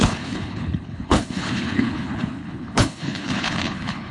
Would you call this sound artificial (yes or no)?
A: yes